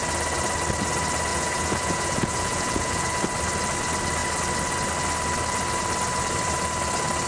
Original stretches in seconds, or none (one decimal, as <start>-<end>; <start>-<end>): 0.0-1.3; 3.2-7.3